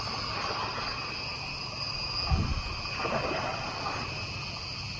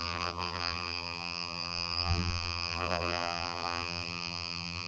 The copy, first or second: second